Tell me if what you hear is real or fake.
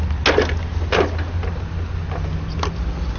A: real